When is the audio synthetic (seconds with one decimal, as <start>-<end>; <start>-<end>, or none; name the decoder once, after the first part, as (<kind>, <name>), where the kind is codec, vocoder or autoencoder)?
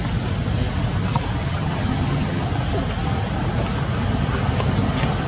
1.4-2.5 (vocoder, HiFi-GAN)